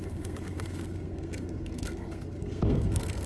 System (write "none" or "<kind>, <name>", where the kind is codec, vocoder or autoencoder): codec, SNAC